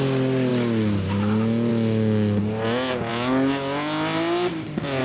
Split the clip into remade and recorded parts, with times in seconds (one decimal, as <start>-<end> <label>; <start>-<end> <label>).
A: 0.0-5.0 recorded